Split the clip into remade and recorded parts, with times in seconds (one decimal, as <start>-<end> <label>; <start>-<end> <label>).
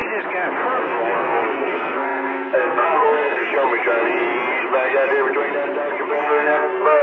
0.0-0.8 recorded; 0.8-3.5 remade; 3.5-6.1 recorded; 6.1-7.0 remade